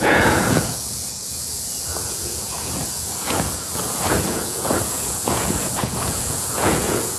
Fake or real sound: fake